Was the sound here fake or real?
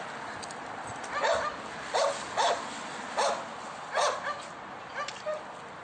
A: real